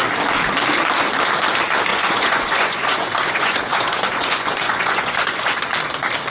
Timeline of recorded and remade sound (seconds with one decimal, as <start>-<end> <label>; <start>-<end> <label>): 0.0-1.9 recorded; 1.9-5.7 remade; 5.7-6.3 recorded